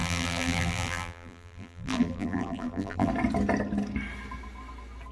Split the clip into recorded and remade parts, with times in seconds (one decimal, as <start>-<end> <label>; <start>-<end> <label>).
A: 0.0-3.1 remade; 3.1-5.1 recorded